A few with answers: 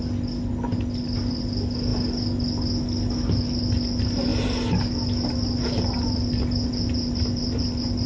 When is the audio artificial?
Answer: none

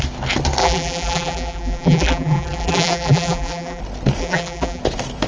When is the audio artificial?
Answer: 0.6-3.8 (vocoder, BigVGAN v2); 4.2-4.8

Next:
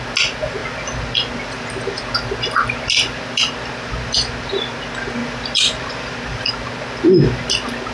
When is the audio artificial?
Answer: 5.2-6.5 (vocoder, BigVGAN v2)

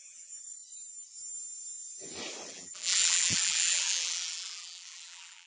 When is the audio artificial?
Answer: 0.0-0.6 (vocoder, BigVGAN v2); 2.5-5.5

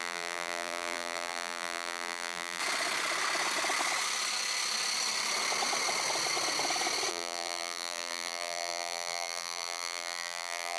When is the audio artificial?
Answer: 0.0-2.6 (vocoder, BigVGAN v2); 7.1-10.8

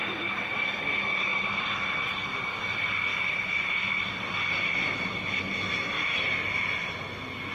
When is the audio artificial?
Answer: none

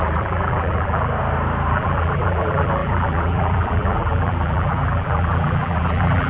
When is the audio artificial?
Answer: 0.0-1.1 (vocoder, BigVGAN v2); 1.7-6.3